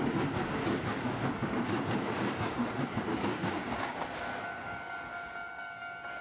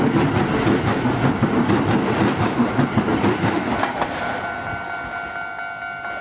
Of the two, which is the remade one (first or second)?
first